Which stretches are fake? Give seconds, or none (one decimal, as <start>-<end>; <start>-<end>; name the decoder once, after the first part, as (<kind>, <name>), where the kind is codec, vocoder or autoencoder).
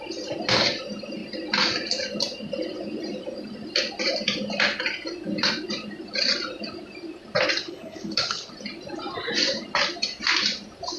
7.6-8.5 (codec, HILCodec)